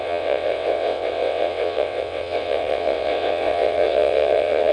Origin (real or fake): fake